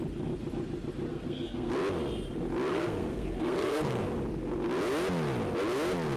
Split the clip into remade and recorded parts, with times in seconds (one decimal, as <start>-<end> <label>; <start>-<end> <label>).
0.0-1.1 recorded; 1.1-1.7 remade; 1.7-2.7 recorded; 2.7-4.0 remade; 4.0-6.2 recorded